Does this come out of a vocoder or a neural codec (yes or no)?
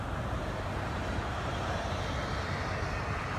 no